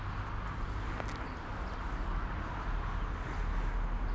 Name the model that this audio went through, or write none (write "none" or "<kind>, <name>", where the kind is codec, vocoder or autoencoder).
none